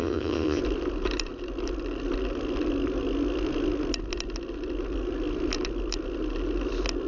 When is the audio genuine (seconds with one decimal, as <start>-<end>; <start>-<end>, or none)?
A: 0.6-7.1